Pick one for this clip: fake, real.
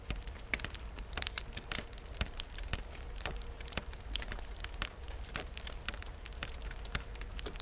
fake